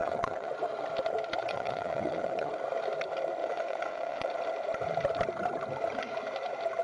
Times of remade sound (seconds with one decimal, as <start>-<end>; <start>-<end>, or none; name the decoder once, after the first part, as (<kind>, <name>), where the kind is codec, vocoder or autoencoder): 0.0-0.5 (vocoder, WaveNeXt); 1.4-2.5; 3.4-4.3